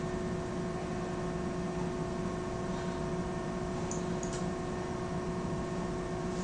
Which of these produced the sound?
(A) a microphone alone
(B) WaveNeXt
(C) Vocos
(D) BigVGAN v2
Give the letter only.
A